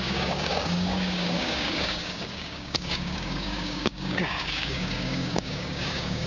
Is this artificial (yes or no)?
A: yes